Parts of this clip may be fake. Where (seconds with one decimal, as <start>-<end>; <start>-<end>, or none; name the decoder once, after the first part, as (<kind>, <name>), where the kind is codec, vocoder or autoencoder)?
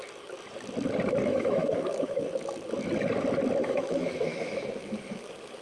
1.3-2.3 (autoencoder, DAC-VAE); 3.6-5.6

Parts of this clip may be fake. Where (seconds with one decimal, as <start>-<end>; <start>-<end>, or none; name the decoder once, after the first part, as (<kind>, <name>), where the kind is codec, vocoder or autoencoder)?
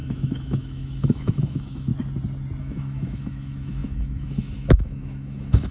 0.0-1.9 (autoencoder, DAC-VAE); 2.6-5.7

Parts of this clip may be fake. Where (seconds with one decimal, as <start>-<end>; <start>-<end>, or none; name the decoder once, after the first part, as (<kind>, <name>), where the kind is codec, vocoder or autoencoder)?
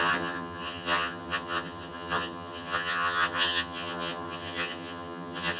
0.0-5.6 (vocoder, HiFi-GAN)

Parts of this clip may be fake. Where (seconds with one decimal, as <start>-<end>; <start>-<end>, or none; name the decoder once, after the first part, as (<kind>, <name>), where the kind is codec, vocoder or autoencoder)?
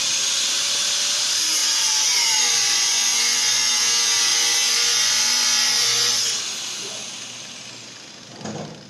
1.6-3.7 (vocoder, Vocos); 4.3-6.2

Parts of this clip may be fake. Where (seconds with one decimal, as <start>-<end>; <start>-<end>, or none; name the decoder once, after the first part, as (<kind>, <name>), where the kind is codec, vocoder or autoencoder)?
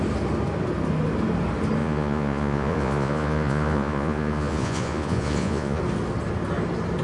1.8-5.8 (vocoder, Vocos)